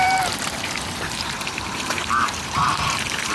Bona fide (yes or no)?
no